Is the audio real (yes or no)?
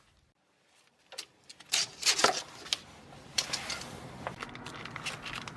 yes